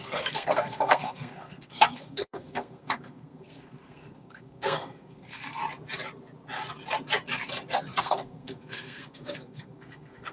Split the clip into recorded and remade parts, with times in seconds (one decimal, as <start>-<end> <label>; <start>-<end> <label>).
0.0-5.6 remade; 5.6-8.0 recorded; 8.0-10.3 remade